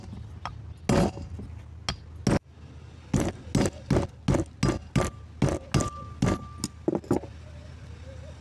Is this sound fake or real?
real